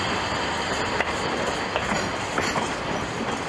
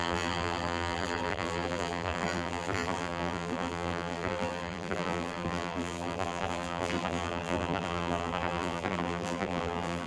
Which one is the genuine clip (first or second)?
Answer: first